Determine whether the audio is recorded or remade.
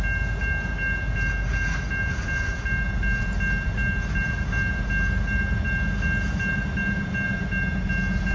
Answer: recorded